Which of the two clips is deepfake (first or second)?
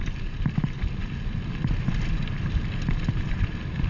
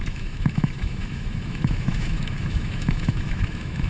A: second